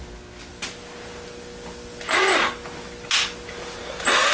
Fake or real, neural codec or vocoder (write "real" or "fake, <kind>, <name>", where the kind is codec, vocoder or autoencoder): real